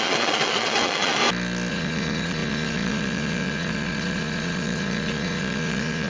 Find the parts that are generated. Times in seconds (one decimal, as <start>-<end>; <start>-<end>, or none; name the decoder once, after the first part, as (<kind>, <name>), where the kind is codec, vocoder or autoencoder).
0.0-1.2 (vocoder, Vocos); 1.7-6.1